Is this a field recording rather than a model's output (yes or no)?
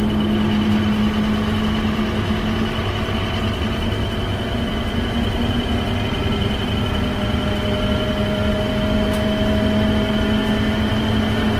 yes